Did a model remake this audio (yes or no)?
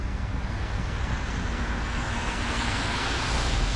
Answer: yes